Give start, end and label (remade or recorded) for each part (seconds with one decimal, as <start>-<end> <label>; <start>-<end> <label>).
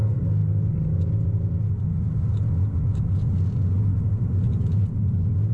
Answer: 0.0-5.5 recorded